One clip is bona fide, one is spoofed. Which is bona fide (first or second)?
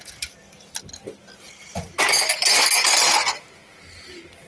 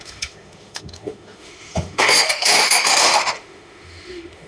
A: first